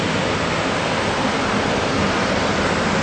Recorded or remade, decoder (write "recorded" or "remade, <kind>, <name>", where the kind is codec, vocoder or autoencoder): recorded